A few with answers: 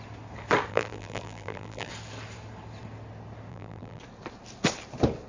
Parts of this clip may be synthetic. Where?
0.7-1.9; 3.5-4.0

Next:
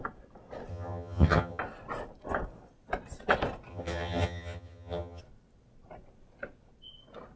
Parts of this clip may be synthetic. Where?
0.7-1.6; 3.7-5.2